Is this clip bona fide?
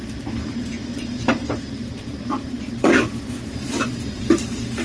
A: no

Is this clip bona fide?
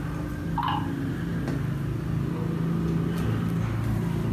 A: yes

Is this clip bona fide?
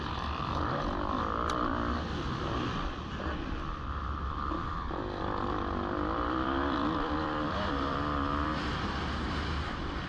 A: no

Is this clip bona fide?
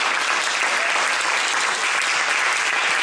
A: yes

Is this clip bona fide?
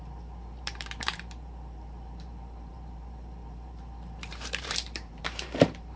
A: no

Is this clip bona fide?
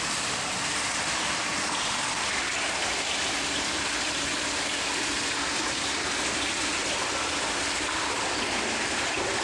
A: yes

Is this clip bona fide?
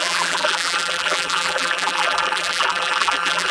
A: no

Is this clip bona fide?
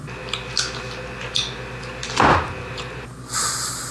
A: yes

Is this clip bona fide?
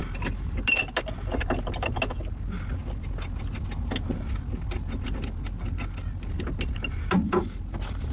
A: yes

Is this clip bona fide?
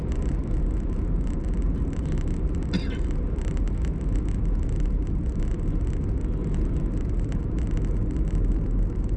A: yes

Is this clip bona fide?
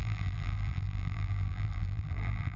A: no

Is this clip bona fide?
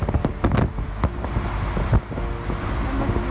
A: yes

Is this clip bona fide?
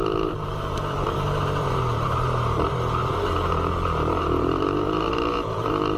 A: no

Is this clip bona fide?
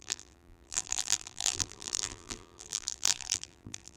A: no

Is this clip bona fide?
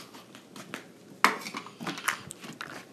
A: yes